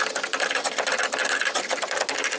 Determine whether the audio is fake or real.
real